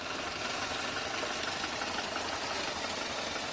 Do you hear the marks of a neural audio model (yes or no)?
no